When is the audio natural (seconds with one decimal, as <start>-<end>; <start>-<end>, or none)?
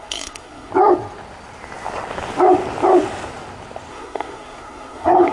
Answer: 0.7-3.9